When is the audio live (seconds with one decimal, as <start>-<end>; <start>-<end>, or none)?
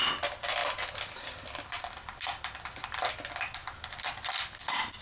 0.0-5.0